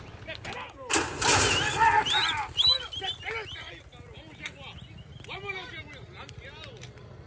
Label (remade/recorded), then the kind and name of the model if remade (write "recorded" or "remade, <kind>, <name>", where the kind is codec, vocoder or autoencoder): recorded